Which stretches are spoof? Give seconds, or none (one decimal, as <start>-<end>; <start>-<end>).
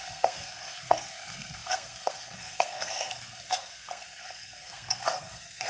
0.0-5.7